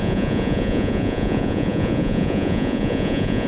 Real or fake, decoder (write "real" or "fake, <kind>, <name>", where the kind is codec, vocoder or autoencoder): fake, vocoder, Vocos